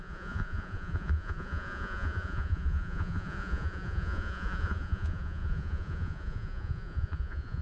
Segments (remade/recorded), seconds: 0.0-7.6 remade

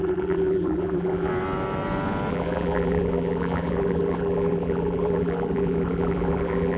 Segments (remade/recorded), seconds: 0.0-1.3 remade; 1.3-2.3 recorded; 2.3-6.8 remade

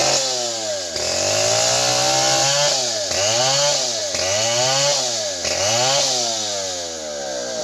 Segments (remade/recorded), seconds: 0.0-7.6 recorded